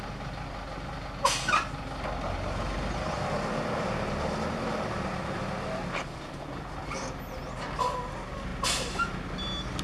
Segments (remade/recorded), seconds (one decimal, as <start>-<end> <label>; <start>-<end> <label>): 0.0-9.8 recorded